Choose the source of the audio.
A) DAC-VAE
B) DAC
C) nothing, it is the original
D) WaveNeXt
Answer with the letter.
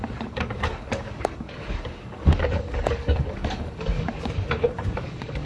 B